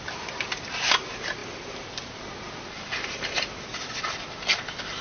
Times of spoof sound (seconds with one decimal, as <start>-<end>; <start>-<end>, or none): none